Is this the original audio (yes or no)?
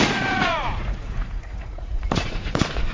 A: no